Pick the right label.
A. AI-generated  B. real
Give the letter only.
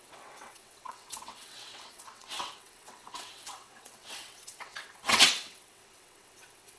A